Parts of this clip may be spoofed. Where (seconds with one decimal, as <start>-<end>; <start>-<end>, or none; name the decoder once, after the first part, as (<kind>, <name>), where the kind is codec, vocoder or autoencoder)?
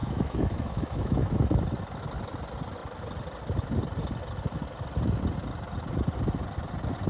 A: 0.0-1.6 (autoencoder, DAC-VAE)